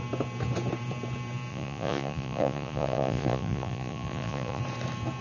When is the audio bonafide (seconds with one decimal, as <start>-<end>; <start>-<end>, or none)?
0.0-1.5; 4.6-5.2